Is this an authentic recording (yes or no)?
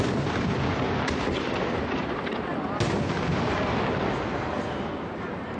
yes